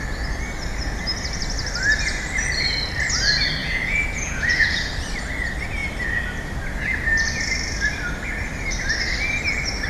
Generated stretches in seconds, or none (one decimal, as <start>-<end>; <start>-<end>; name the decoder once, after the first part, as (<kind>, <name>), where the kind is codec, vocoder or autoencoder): 3.6-4.9 (vocoder, Vocos)